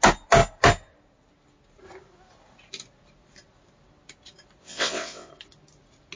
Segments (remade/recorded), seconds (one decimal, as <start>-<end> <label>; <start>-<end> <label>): 0.0-4.6 recorded; 4.6-5.3 remade; 5.3-6.2 recorded